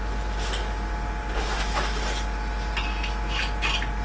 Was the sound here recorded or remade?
recorded